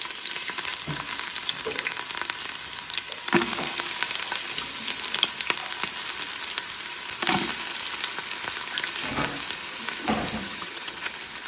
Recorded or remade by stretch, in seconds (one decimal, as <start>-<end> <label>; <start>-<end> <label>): 0.0-10.4 recorded; 10.4-11.1 remade; 11.1-11.5 recorded